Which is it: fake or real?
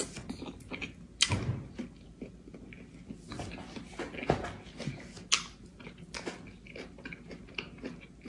real